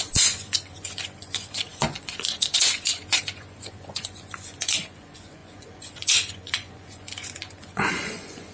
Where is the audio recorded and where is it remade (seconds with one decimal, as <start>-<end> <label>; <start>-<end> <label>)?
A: 0.0-8.5 remade